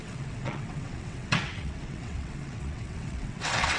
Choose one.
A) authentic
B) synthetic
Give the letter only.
B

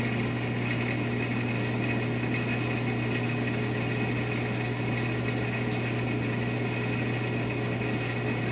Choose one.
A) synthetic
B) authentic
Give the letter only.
B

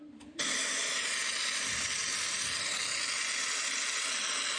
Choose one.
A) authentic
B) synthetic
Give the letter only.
A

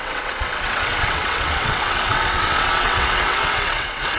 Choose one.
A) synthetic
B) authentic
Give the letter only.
A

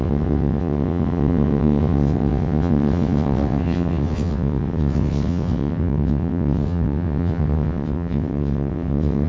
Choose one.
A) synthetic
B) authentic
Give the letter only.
A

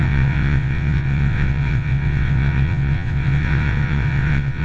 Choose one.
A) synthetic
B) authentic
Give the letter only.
A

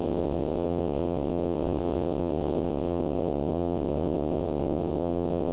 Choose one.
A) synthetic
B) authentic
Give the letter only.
A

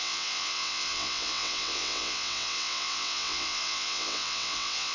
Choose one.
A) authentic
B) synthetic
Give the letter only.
B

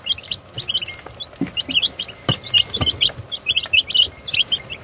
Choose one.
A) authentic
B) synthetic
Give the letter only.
A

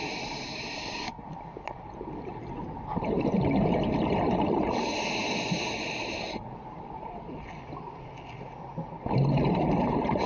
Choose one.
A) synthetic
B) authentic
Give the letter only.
B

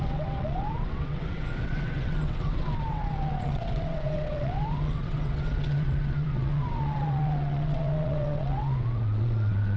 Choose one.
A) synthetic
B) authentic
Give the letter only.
A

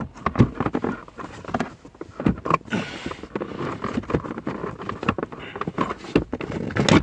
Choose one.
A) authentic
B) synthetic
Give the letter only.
A